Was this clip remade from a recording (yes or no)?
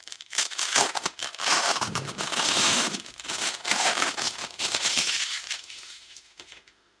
yes